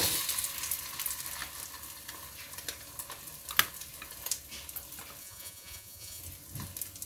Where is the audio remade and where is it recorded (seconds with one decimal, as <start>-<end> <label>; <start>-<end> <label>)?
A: 0.0-5.2 recorded; 5.2-6.2 remade; 6.2-7.1 recorded